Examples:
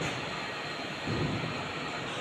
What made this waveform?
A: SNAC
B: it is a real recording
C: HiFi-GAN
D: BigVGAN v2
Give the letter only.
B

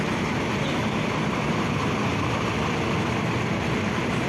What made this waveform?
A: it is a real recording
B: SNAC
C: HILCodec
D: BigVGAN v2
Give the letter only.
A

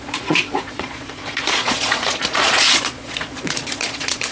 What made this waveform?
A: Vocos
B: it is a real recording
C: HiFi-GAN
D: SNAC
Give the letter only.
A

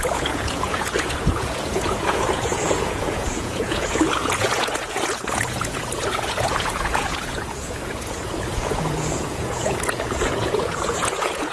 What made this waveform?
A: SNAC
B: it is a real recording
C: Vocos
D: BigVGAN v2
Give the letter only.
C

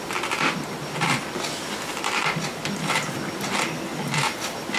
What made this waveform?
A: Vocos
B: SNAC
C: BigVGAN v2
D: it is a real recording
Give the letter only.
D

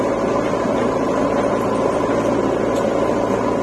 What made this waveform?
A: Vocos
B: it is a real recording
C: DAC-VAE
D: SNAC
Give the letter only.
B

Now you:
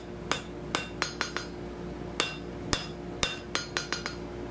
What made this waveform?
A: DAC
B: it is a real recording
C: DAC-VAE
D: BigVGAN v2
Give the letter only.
B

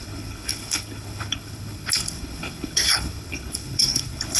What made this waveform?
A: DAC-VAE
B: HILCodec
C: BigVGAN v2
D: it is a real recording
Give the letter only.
B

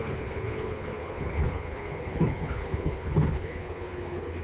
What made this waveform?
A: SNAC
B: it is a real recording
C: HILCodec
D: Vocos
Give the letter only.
C